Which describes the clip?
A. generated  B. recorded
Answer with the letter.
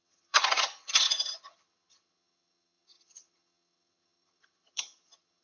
A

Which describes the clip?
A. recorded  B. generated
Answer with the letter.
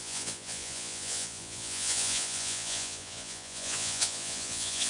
B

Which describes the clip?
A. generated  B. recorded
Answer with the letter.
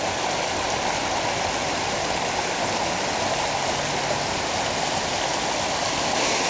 B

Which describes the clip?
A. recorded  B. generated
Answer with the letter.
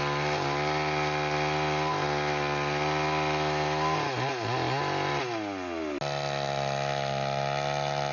A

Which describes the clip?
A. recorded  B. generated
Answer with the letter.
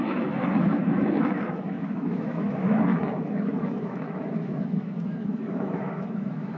B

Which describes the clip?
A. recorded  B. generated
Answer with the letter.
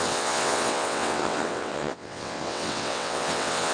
B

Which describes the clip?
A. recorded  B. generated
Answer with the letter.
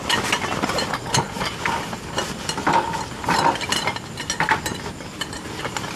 A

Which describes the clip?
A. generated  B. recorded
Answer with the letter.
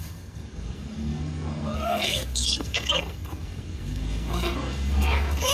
A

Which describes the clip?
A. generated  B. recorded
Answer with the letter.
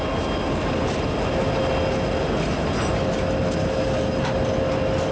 B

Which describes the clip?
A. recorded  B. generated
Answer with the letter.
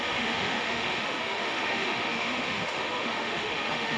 B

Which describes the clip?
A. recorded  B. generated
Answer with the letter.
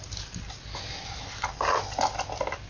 A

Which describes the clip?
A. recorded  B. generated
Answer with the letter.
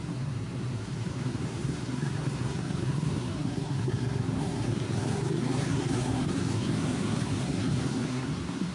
B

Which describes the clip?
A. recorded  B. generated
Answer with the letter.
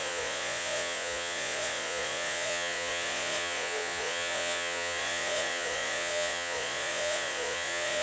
B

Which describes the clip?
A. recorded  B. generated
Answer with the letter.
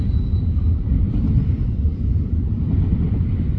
A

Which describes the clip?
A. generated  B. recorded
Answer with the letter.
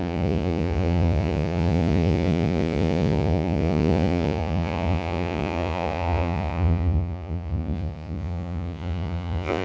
A